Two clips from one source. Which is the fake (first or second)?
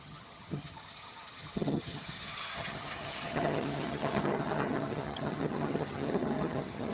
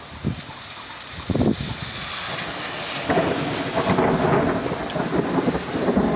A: first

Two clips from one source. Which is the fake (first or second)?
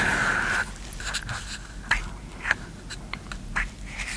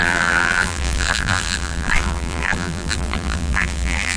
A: second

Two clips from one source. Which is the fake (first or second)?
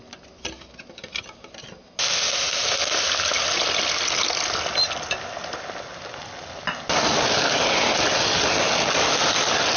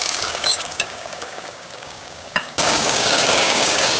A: second